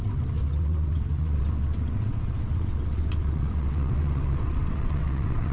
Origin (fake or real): fake